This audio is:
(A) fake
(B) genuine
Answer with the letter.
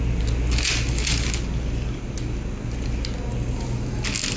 B